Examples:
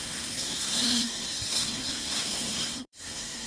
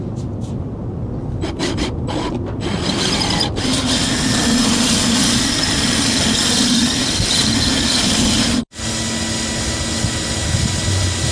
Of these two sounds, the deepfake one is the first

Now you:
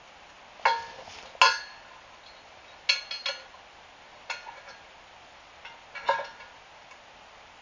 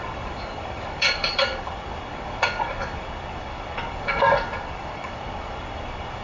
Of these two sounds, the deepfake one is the second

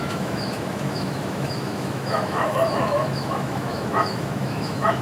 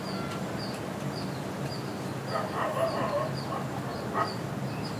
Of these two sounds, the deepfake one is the first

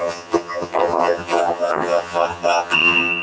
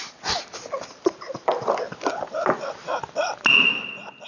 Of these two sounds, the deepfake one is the first